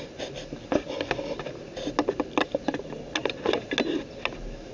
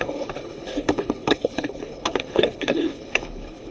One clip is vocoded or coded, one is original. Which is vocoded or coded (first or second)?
second